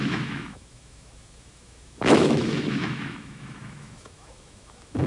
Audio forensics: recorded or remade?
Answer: remade